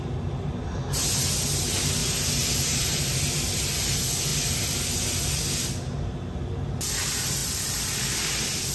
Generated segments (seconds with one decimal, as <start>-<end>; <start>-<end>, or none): 2.0-3.0